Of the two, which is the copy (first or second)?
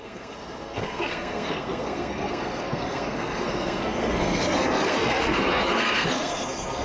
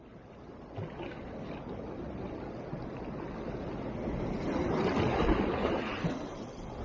first